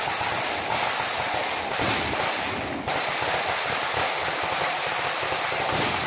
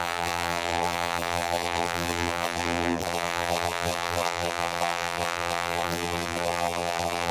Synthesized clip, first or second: second